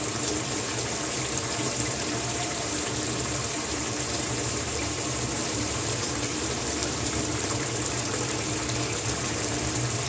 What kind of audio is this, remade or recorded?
remade